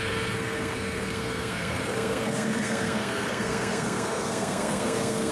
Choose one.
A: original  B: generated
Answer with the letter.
B